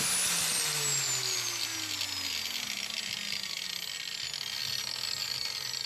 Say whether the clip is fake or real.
real